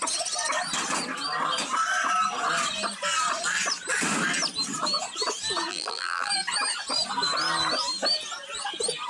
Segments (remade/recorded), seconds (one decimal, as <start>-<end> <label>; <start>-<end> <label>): 0.0-5.7 recorded; 5.7-6.3 remade; 6.3-9.1 recorded